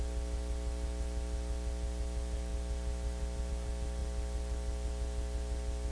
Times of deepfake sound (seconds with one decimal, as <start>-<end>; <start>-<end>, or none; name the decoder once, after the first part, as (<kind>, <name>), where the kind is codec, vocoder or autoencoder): none